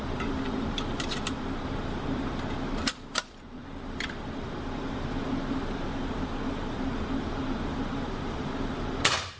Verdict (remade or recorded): remade